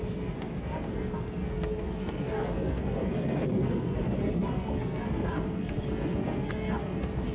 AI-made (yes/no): yes